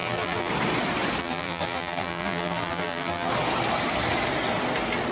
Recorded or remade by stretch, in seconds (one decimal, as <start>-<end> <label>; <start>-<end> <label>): 0.0-0.5 remade; 0.5-1.2 recorded; 1.2-3.3 remade; 3.3-5.1 recorded